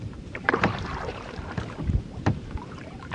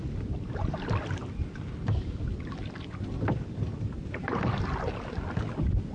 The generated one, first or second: first